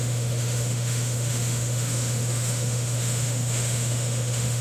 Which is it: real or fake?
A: fake